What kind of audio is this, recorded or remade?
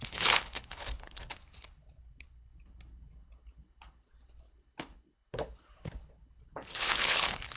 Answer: remade